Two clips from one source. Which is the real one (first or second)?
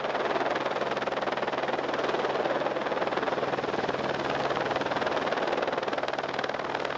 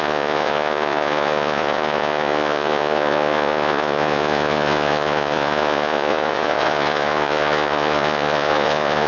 first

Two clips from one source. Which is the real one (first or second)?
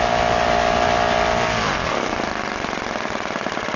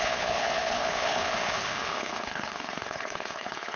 first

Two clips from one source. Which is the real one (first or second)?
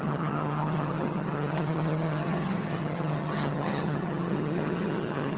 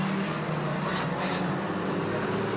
second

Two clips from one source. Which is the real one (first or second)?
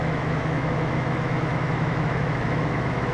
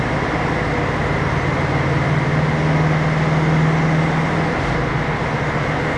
second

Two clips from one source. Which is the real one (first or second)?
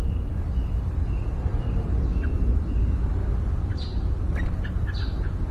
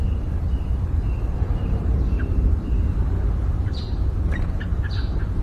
first